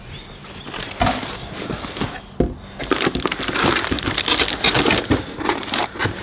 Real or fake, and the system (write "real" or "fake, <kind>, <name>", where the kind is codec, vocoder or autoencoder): real